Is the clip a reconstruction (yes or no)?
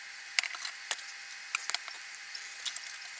no